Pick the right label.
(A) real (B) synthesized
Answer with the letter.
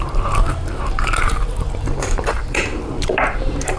B